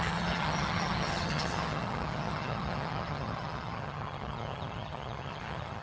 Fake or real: fake